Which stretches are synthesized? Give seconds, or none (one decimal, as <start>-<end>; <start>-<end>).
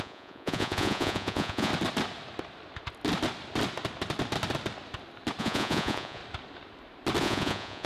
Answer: 0.0-1.7; 5.4-6.2; 7.2-7.9